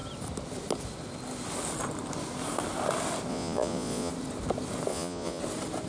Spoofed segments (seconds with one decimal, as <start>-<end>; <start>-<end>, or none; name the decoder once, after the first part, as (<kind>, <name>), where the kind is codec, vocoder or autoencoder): 3.3-4.1 (vocoder, Vocos); 4.9-5.4